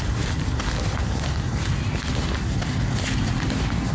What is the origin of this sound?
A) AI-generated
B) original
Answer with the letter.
B